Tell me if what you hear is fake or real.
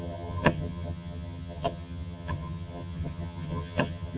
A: fake